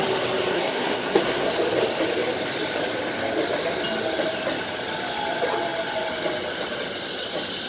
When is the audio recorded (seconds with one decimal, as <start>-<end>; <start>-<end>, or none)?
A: 0.0-0.5; 1.5-7.7